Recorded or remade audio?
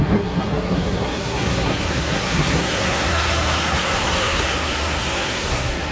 remade